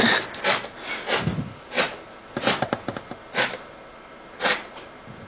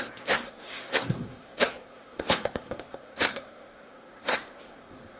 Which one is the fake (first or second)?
second